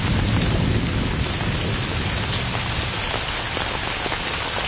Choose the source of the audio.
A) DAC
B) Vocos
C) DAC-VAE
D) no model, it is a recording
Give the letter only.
D